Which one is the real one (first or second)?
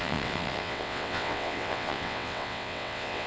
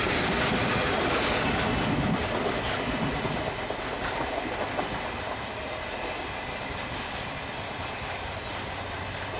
second